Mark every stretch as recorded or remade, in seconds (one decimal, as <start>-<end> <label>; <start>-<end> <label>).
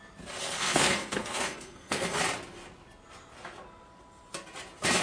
0.0-0.4 recorded; 0.4-2.2 remade; 2.2-5.0 recorded